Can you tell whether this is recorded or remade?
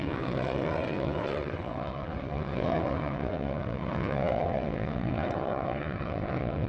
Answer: remade